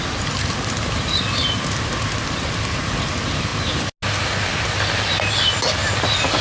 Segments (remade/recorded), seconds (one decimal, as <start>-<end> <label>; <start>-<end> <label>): 0.0-6.4 recorded